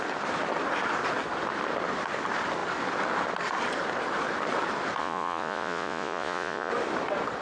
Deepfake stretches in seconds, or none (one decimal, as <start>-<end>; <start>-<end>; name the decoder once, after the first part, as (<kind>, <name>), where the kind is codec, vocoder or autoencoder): 5.0-6.7 (vocoder, Vocos)